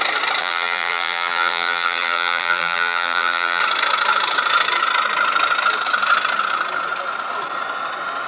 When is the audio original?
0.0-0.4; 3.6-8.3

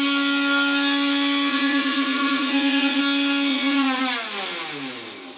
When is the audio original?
0.0-1.5; 3.0-3.5; 4.0-5.4

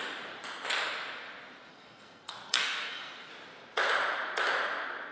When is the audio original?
0.0-1.7; 3.3-5.1

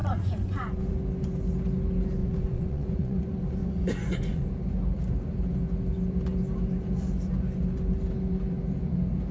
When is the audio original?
0.9-2.2; 3.2-3.6; 4.5-9.3

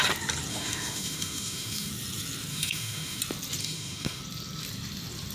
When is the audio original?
0.0-0.5; 1.9-2.5; 3.2-3.6; 4.2-5.3

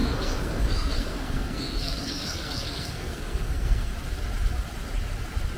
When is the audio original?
3.9-5.6